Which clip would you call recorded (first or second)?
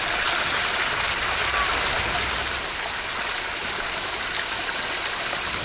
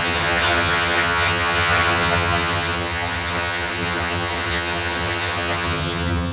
first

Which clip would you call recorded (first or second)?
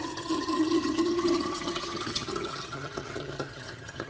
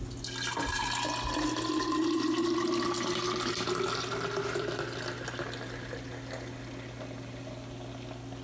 second